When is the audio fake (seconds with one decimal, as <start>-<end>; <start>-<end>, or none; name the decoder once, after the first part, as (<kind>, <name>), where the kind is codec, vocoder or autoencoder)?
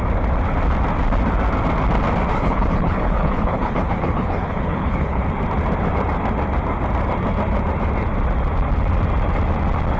2.3-5.2 (codec, HILCodec)